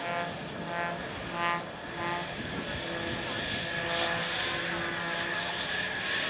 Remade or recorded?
recorded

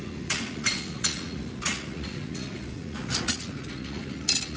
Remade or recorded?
remade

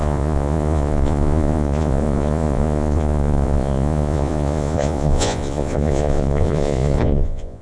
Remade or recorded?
remade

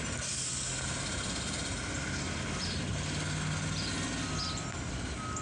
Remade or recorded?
recorded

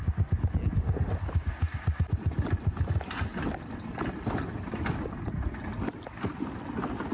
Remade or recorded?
recorded